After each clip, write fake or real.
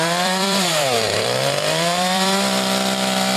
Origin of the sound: fake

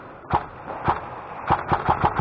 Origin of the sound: real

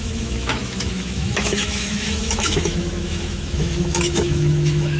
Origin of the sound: fake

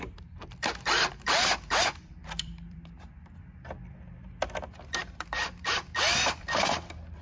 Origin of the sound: fake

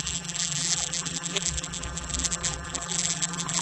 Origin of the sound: fake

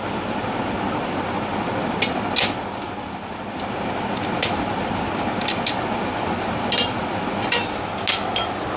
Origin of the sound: real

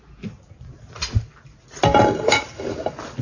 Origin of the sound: real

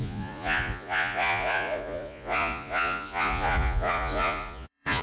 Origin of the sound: fake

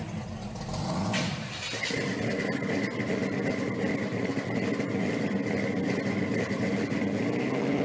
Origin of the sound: real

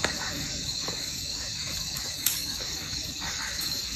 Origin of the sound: fake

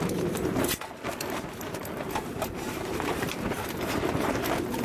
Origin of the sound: fake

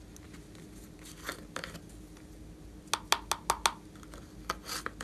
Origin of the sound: real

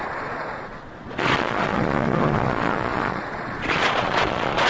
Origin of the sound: fake